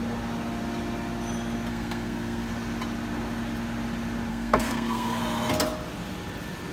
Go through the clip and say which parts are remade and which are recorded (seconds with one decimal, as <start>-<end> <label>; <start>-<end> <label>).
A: 0.0-1.7 recorded; 1.7-2.5 remade; 2.5-4.3 recorded; 4.3-5.2 remade; 5.2-6.7 recorded